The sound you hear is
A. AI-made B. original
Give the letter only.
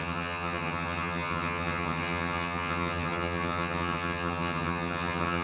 A